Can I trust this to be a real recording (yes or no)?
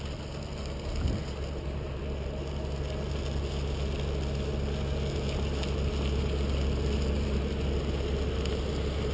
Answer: yes